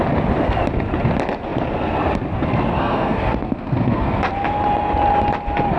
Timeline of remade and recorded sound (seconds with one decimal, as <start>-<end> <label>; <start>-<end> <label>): 0.0-2.7 recorded; 2.7-4.3 remade; 4.3-5.8 recorded